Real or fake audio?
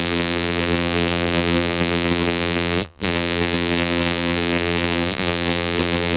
fake